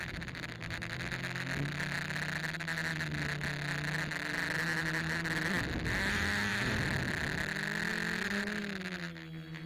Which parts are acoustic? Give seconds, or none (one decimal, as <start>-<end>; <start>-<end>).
0.0-9.7